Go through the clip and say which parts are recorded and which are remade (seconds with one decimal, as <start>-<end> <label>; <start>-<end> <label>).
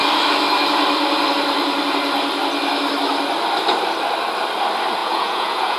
0.0-5.0 recorded; 5.0-5.8 remade